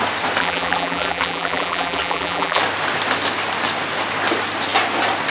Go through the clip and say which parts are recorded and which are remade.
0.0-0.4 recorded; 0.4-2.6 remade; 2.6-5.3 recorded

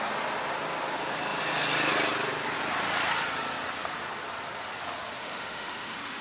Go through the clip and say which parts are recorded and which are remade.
0.0-5.2 recorded; 5.2-6.2 remade

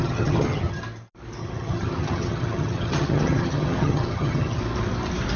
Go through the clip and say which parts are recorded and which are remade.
0.0-0.8 remade; 0.8-1.4 recorded; 1.4-4.6 remade; 4.6-5.4 recorded

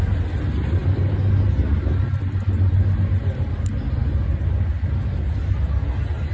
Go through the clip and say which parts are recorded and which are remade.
0.0-6.3 recorded

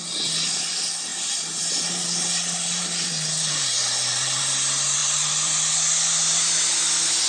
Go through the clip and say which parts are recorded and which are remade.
0.0-1.1 recorded; 1.1-4.4 remade; 4.4-5.0 recorded; 5.0-5.7 remade; 5.7-7.3 recorded